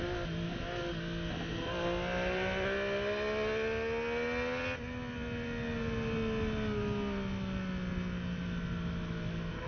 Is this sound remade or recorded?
recorded